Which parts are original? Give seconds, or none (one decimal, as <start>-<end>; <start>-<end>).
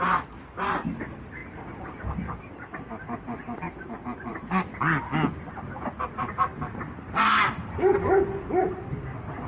0.0-9.5